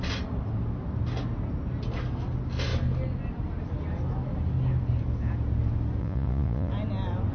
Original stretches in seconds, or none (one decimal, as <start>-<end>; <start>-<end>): 0.0-6.0; 6.7-7.3